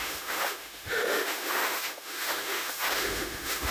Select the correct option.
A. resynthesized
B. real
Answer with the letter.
A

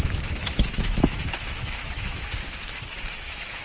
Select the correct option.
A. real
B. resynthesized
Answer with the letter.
B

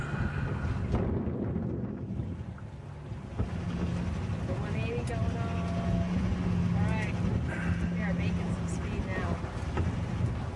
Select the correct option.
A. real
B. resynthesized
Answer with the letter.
A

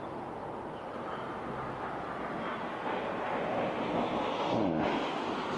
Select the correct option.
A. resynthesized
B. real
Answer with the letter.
B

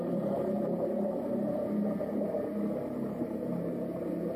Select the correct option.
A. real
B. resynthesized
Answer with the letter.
A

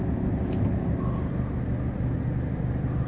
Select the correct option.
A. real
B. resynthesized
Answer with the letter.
A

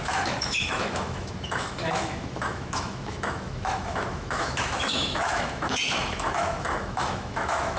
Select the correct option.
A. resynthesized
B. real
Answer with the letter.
A